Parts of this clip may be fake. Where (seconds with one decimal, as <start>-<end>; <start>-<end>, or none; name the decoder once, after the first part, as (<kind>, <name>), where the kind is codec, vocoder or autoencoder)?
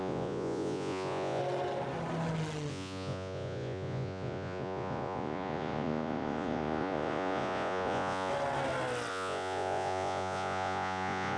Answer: 0.0-1.4 (vocoder, Vocos); 2.7-8.3; 9.1-11.4